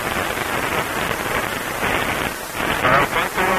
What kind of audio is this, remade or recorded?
recorded